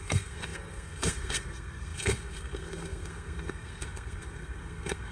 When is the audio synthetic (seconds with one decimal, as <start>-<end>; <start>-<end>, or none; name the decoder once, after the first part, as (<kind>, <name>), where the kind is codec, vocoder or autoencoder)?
0.0-5.1 (codec, SNAC)